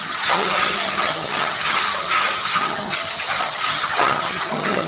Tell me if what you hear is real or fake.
fake